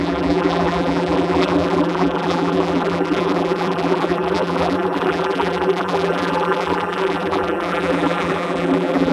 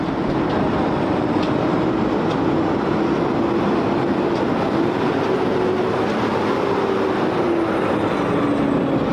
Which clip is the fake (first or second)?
first